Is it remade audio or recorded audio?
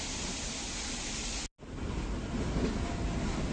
recorded